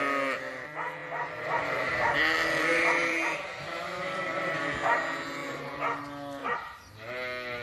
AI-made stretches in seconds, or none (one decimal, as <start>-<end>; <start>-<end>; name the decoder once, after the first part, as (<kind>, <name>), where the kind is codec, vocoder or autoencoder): 1.0-2.2 (vocoder, BigVGAN v2); 2.7-4.6; 5.4-6.0; 6.4-6.9